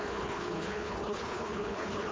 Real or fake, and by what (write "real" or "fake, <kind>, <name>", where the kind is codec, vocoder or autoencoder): fake, codec, HILCodec